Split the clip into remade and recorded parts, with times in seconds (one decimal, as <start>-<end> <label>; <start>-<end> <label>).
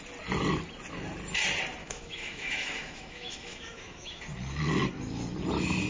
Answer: 0.0-1.8 recorded; 1.8-4.2 remade; 4.2-5.9 recorded